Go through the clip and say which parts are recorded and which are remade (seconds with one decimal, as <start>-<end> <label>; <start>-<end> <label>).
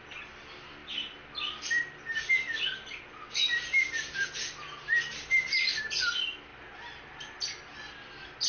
0.0-8.5 recorded